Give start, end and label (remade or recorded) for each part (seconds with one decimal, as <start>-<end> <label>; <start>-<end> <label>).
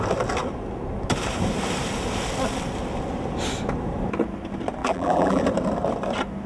0.0-4.8 recorded; 4.8-5.4 remade; 5.4-6.5 recorded